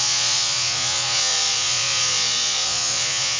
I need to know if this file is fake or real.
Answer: fake